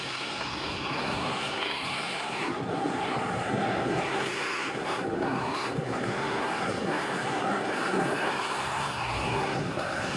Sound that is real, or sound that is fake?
fake